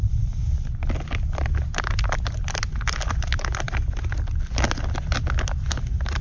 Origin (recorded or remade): recorded